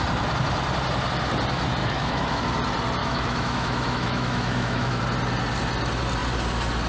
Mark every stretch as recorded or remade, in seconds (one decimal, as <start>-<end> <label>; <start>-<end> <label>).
0.0-1.8 recorded; 1.8-2.4 remade; 2.4-3.0 recorded; 3.0-5.0 remade; 5.0-6.9 recorded